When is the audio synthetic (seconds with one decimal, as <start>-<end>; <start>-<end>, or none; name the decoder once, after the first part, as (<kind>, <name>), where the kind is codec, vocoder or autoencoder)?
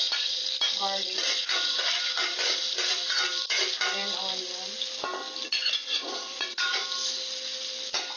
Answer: 0.0-0.4 (vocoder, Vocos); 1.4-2.6; 5.7-6.8